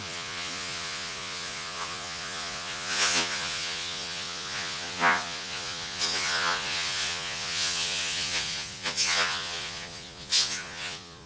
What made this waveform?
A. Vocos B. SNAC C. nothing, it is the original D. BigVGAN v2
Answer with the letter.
A